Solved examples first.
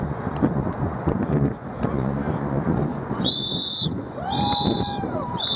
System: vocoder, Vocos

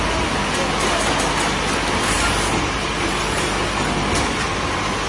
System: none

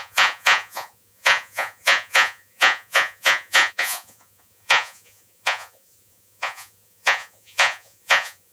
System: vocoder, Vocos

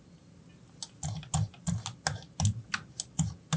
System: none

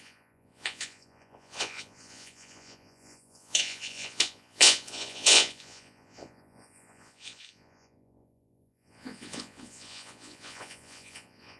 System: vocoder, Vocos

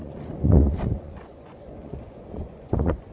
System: vocoder, Vocos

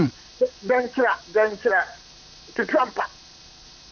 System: vocoder, Vocos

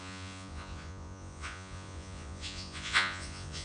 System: vocoder, Vocos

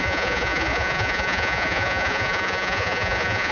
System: vocoder, Vocos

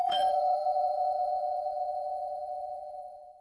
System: vocoder, Vocos